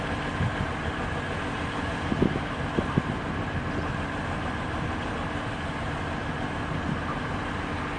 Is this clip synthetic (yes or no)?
no